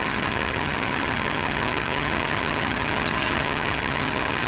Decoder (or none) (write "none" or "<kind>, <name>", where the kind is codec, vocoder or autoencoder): vocoder, HiFi-GAN